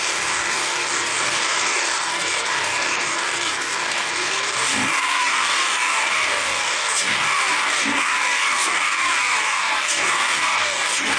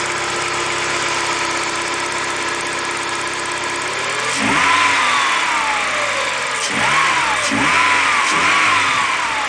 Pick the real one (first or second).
second